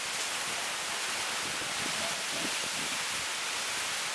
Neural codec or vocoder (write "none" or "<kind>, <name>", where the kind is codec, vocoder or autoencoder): none